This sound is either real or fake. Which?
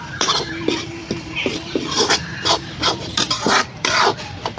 fake